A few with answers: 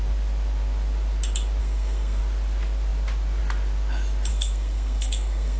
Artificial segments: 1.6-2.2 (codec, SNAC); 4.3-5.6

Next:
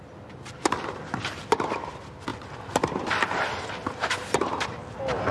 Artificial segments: 2.3-4.0 (vocoder, BigVGAN v2)

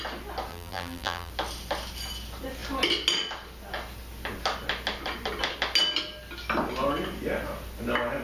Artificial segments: 0.5-1.3 (vocoder, BigVGAN v2)

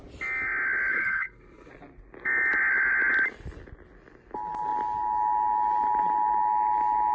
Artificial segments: 0.9-1.7 (codec, HILCodec)

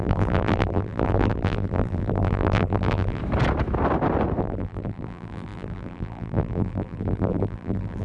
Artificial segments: 0.0-3.2 (vocoder, BigVGAN v2); 4.4-8.0